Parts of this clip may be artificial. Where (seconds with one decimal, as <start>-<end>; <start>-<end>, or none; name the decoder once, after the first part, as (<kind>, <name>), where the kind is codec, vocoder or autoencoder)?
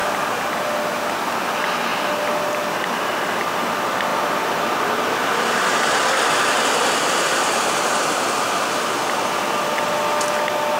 none